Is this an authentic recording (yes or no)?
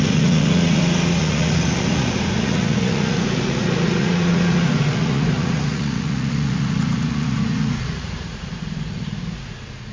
no